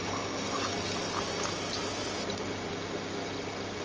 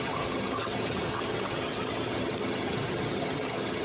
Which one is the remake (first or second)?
second